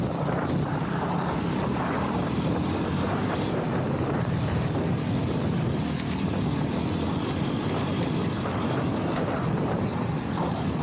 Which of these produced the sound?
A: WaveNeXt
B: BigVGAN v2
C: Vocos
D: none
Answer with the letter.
B